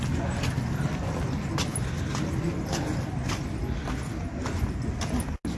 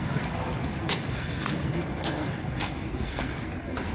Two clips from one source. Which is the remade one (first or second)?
second